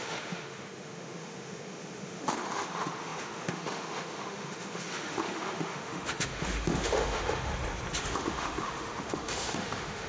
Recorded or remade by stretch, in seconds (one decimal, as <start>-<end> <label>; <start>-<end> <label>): 0.0-7.5 remade; 7.5-8.0 recorded; 8.0-10.1 remade